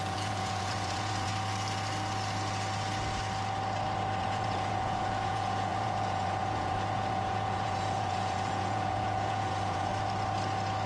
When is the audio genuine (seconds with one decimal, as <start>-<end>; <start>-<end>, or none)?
1.3-4.2; 9.9-10.9